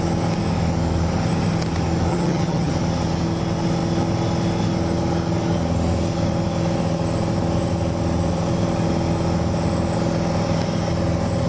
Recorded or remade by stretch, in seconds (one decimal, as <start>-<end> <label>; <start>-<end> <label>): 0.0-2.1 recorded; 2.1-2.7 remade; 2.7-11.5 recorded